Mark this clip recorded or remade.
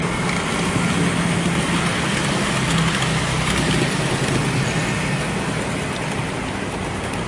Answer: recorded